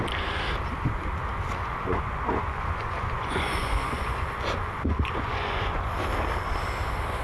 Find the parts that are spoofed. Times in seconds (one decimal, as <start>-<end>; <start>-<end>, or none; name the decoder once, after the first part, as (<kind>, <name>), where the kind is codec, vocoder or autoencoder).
1.6-5.9 (vocoder, Vocos)